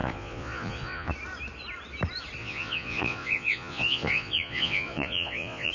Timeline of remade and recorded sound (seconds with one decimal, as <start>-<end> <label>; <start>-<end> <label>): 0.0-1.1 remade; 1.1-2.4 recorded; 2.4-5.7 remade